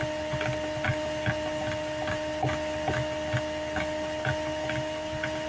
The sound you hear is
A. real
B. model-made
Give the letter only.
A